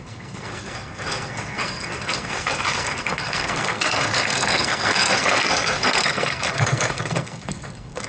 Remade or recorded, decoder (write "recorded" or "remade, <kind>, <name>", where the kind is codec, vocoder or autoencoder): remade, codec, SNAC